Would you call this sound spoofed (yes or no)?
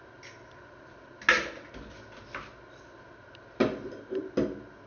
no